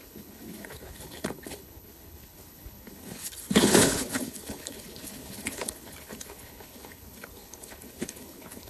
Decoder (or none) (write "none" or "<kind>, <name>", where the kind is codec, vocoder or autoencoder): codec, HILCodec